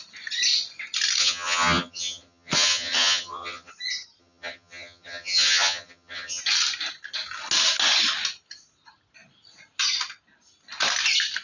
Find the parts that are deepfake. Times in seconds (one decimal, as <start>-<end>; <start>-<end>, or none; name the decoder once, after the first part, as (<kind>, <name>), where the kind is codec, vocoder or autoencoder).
1.2-3.7 (vocoder, HiFi-GAN); 4.2-6.4